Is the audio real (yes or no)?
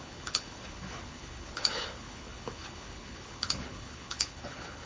no